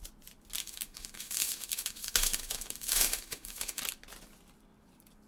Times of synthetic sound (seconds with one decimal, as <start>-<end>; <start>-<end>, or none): 0.6-3.8